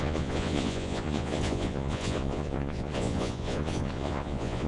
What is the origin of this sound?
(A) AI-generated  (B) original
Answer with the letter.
A